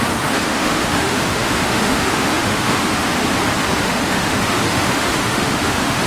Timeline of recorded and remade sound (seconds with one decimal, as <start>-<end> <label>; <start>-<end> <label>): 0.0-3.2 remade; 3.2-3.8 recorded; 3.8-6.1 remade